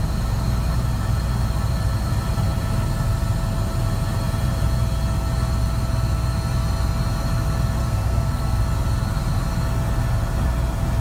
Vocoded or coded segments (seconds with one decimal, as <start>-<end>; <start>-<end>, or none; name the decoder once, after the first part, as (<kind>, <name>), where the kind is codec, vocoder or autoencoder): 7.8-8.6 (codec, SNAC)